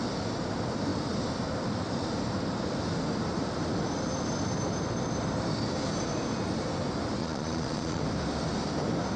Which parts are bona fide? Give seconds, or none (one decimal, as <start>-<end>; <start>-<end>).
0.0-7.2; 8.0-9.2